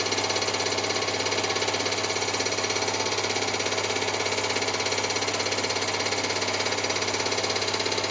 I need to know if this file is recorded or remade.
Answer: recorded